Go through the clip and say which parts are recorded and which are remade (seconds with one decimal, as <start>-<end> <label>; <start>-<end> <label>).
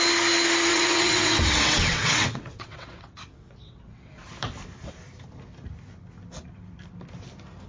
0.0-0.7 recorded; 0.7-4.2 remade; 4.2-7.7 recorded